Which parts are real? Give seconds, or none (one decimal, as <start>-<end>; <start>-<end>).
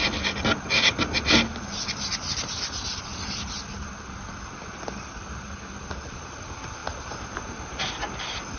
0.0-8.6